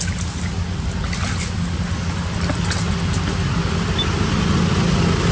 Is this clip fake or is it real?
real